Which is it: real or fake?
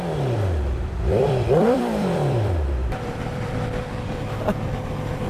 fake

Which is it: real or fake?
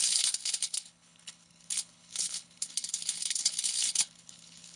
fake